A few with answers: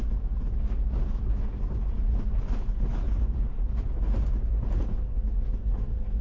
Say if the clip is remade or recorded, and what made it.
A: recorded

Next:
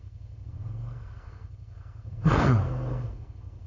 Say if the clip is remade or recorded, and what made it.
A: remade, codec, SNAC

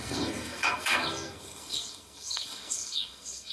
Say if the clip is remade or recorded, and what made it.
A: remade, codec, SNAC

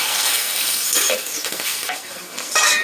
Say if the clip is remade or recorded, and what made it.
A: remade, codec, SNAC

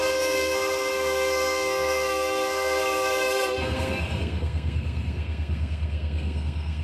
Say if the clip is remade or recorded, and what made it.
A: remade, codec, SNAC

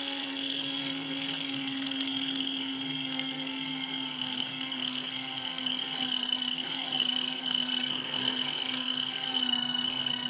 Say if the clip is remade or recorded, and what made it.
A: remade, codec, SNAC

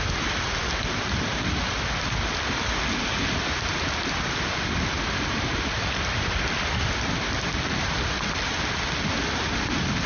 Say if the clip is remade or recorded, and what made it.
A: recorded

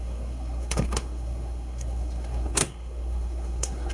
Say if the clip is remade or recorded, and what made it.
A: remade, codec, SNAC